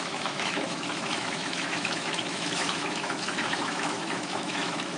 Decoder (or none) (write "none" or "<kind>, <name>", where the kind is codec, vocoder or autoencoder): autoencoder, DAC-VAE